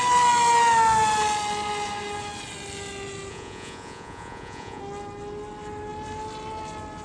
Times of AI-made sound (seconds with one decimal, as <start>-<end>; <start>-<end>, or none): 3.3-4.8